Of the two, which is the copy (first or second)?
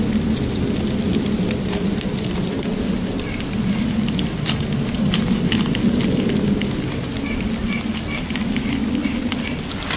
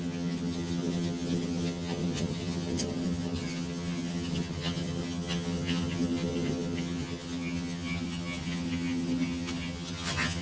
second